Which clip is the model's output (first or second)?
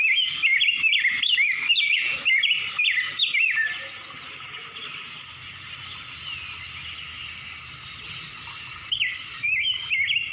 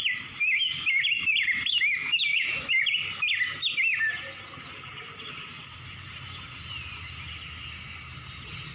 first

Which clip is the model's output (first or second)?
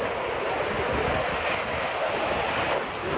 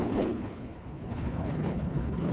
second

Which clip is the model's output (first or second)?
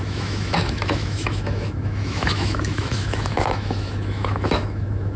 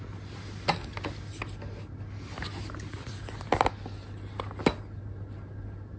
first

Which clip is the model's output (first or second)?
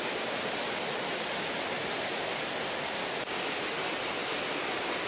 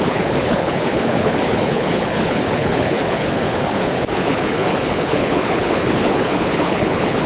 second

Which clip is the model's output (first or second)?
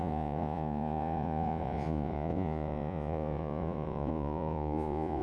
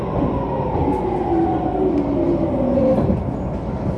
first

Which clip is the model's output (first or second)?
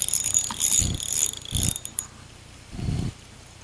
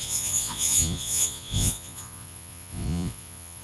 second